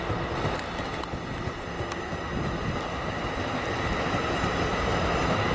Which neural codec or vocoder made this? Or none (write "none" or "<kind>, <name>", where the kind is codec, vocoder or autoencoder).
none